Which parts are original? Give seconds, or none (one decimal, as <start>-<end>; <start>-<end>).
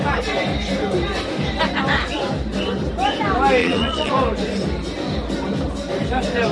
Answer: 0.0-3.6; 4.1-6.5